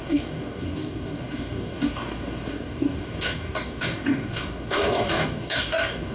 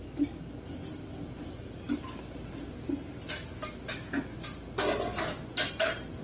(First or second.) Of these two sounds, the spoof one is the first